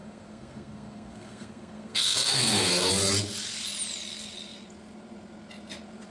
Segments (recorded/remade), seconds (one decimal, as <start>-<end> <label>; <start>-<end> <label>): 0.0-2.9 remade; 2.9-6.1 recorded